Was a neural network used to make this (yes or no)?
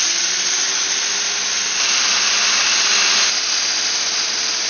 no